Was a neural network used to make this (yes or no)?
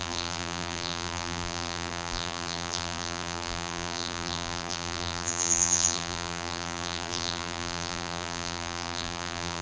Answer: yes